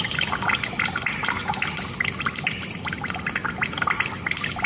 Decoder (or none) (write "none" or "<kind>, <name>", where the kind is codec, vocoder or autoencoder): none